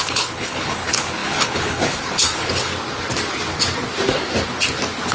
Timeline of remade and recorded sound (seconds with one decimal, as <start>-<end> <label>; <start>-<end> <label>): 0.0-2.7 remade; 2.7-5.1 recorded